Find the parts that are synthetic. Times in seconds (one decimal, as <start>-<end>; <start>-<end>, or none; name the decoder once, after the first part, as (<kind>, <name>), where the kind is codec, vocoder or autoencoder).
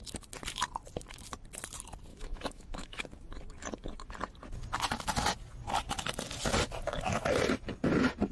2.1-3.0 (autoencoder, DAC-VAE)